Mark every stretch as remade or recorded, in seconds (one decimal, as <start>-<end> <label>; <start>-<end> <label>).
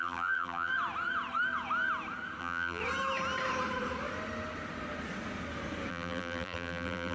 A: 0.0-0.7 remade; 0.7-2.4 recorded; 2.4-2.8 remade; 2.8-5.9 recorded; 5.9-7.1 remade